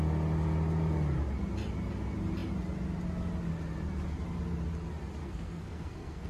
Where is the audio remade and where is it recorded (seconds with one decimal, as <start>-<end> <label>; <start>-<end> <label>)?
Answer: 0.0-5.2 recorded; 5.2-6.3 remade